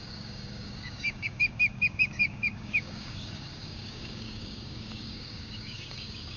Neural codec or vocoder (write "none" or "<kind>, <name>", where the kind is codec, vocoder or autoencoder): codec, DAC